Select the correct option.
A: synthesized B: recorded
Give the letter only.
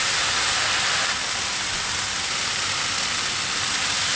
B